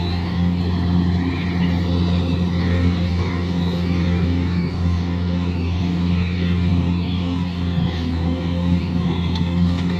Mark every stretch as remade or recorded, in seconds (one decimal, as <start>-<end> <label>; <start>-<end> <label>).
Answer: 0.0-0.6 remade; 0.6-2.6 recorded; 2.6-10.0 remade